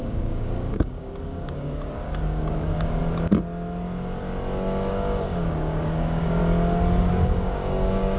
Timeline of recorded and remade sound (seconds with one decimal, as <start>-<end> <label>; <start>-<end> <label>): 0.0-3.0 remade; 3.0-4.9 recorded; 4.9-6.4 remade; 6.4-7.1 recorded; 7.1-8.2 remade

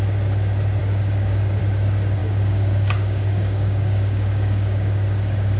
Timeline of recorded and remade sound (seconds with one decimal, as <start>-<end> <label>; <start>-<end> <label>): 0.0-0.8 recorded; 0.8-1.6 remade; 1.6-2.2 recorded; 2.2-5.6 remade

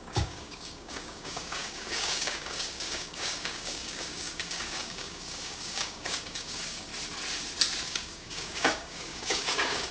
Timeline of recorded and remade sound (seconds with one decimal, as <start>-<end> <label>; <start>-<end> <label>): 0.0-6.9 remade; 6.9-7.8 recorded; 7.8-9.9 remade